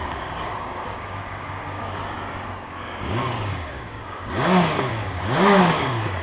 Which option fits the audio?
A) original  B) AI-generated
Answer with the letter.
B